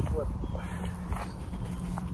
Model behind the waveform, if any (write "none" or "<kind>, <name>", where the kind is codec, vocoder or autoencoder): none